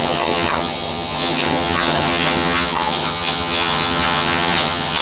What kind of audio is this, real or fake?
fake